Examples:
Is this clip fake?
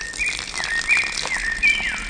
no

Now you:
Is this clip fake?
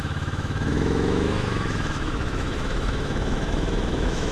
yes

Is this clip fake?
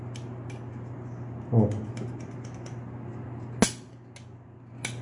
no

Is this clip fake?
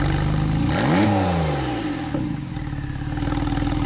no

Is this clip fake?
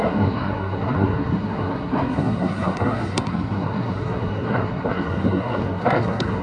yes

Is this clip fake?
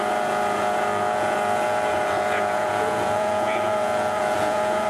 yes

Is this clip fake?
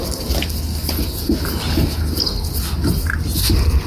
no